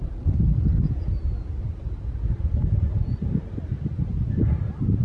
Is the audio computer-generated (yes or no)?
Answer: no